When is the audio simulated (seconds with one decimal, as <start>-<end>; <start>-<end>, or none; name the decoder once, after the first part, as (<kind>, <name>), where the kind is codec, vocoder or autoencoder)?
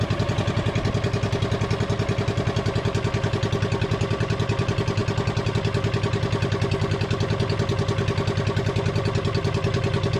none